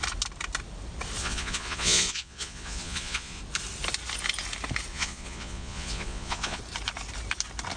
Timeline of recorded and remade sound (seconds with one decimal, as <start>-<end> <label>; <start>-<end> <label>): 0.0-1.2 recorded; 1.2-3.4 remade; 3.4-4.9 recorded; 4.9-6.6 remade; 6.6-7.8 recorded